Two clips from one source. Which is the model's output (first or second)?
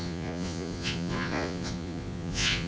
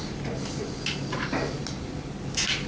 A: first